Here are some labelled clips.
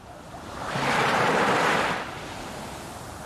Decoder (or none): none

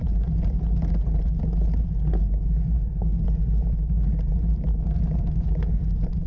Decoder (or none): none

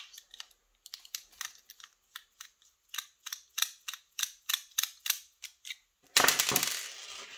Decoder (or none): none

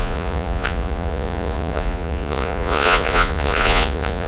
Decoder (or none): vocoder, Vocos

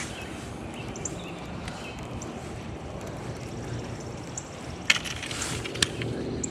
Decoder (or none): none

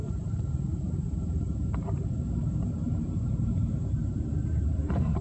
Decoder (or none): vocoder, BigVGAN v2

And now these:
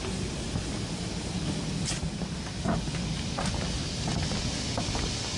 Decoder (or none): none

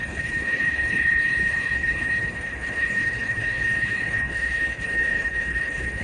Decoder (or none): codec, HILCodec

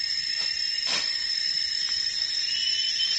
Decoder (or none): vocoder, BigVGAN v2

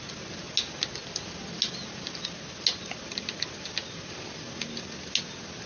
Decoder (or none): none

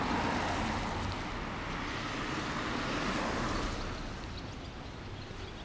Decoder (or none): none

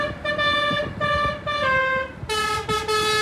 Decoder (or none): none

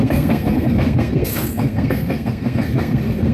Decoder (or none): codec, SNAC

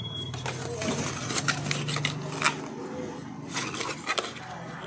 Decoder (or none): none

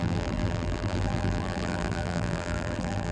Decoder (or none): vocoder, BigVGAN v2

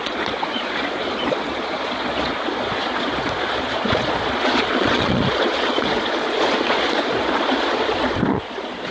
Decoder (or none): vocoder, Vocos